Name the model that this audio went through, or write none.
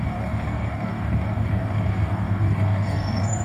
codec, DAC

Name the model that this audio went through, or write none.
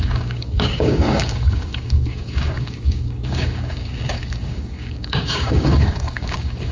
codec, DAC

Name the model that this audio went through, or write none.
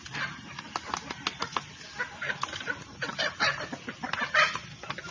none